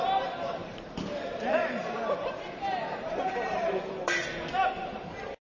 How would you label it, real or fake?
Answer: fake